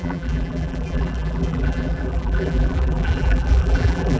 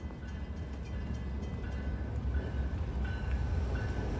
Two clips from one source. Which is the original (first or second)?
second